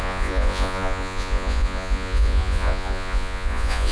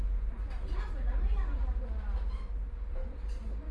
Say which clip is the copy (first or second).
first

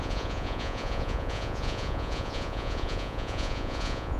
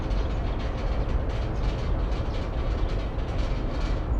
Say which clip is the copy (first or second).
first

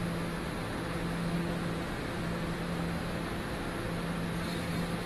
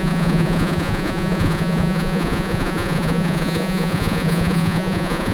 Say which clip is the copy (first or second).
second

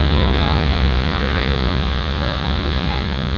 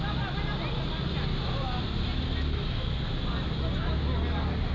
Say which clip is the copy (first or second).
first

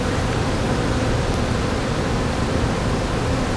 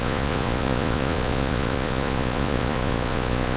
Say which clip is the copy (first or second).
second